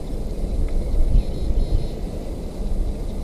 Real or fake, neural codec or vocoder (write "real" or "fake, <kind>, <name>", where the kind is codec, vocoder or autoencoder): fake, vocoder, BigVGAN v2